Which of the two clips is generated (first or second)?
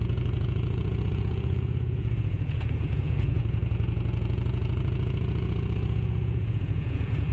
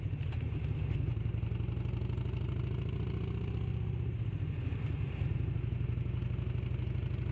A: first